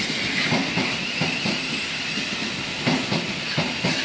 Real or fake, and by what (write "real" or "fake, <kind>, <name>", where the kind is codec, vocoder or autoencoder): real